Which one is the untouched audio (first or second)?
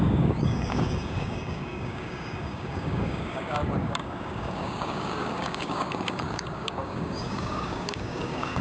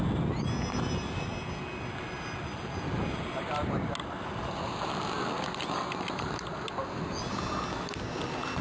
second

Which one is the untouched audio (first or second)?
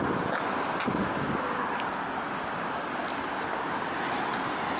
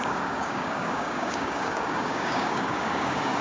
first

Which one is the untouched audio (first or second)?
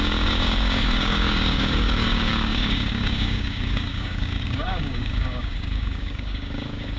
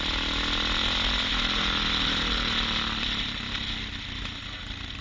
second